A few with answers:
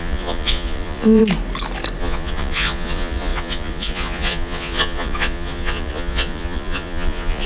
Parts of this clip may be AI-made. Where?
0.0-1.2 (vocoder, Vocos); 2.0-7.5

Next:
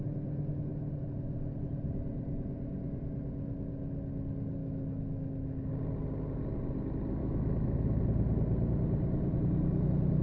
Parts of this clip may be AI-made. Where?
4.6-5.7 (autoencoder, DAC-VAE); 7.2-8.0

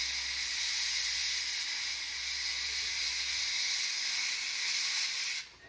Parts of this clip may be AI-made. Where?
none

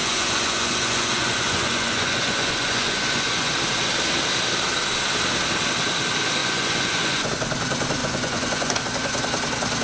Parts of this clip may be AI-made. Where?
0.0-3.5 (vocoder, Vocos); 6.4-7.3; 8.0-8.8